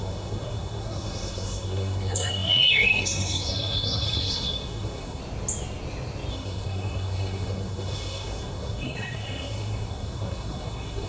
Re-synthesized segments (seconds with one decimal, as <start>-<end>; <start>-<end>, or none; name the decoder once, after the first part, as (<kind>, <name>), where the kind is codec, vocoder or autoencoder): 0.0-5.2 (codec, SNAC); 6.3-11.1